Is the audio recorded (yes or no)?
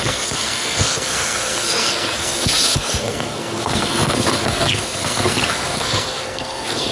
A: no